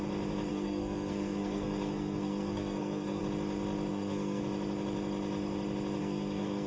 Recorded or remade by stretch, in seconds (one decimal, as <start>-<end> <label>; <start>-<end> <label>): 0.0-0.5 recorded; 0.5-3.2 remade; 3.2-3.9 recorded; 3.9-4.4 remade; 4.4-6.0 recorded; 6.0-6.7 remade